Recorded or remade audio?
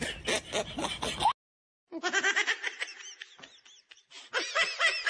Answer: recorded